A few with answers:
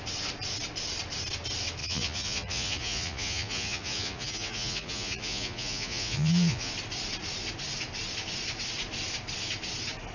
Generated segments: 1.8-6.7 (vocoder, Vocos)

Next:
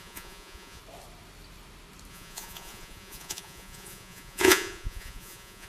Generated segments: 0.0-0.8 (vocoder, Vocos); 2.1-5.7

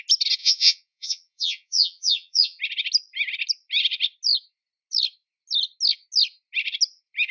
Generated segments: 0.4-2.6 (vocoder, Vocos)

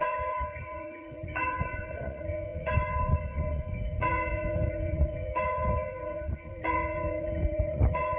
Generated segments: 0.0-8.2 (vocoder, Vocos)